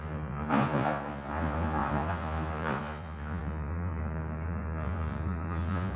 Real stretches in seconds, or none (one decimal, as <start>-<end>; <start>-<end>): none